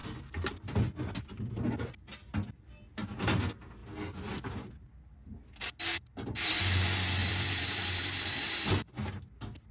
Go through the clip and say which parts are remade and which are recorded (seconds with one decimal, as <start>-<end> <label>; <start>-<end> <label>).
0.0-7.2 recorded; 7.2-8.7 remade; 8.7-9.7 recorded